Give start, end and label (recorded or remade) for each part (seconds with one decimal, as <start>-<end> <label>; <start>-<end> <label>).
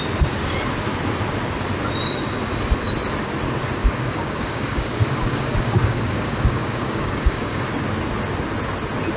0.0-3.8 recorded; 3.8-7.7 remade; 7.7-9.2 recorded